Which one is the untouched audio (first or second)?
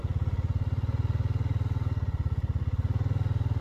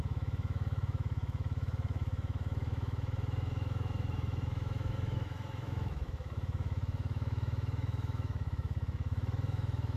first